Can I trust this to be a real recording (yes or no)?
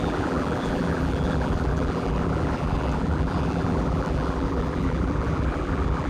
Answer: no